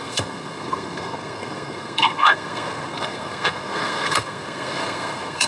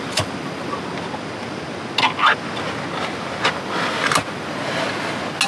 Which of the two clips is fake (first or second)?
first